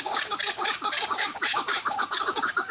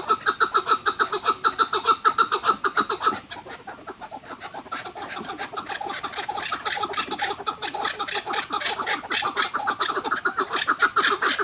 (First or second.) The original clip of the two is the second